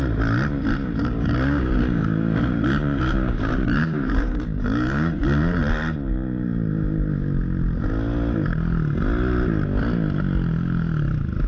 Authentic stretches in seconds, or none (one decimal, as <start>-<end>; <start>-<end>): 0.0-1.0; 5.6-11.5